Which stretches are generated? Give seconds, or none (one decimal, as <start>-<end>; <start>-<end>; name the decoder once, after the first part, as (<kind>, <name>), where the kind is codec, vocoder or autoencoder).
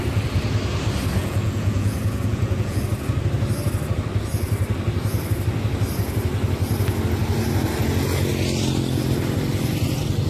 1.2-2.8 (vocoder, Vocos)